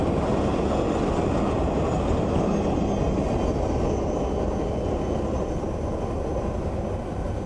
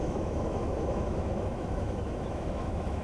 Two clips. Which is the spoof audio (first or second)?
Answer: second